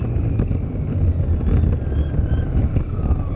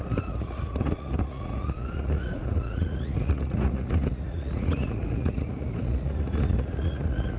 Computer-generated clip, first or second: second